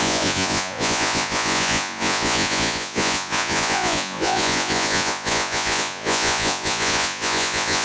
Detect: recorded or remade remade